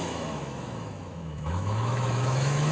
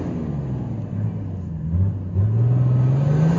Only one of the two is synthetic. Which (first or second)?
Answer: first